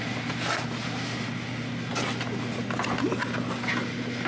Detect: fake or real real